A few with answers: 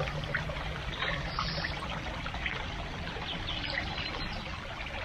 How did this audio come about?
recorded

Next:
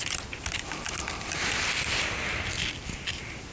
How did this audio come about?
recorded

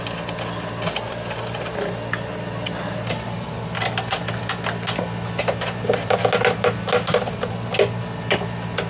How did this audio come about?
recorded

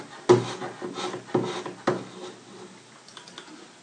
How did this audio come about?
recorded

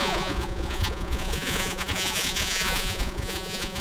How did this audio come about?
remade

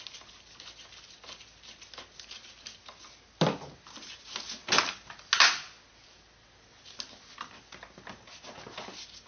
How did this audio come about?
recorded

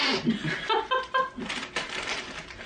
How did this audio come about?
recorded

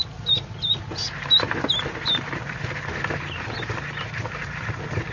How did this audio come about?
recorded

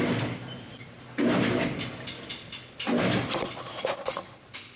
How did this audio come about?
recorded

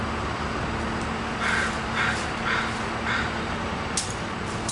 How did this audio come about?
recorded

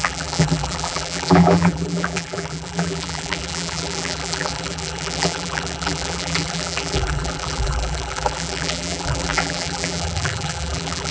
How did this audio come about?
remade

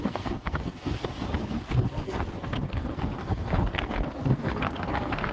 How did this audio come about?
remade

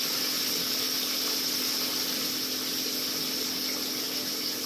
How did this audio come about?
recorded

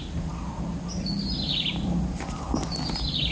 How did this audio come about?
recorded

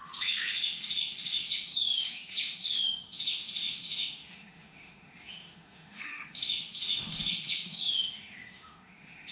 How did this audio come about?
remade